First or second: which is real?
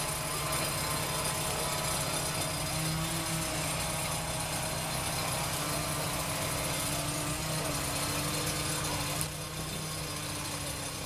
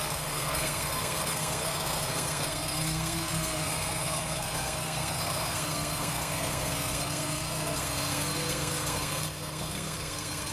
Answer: first